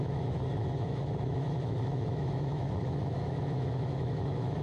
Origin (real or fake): fake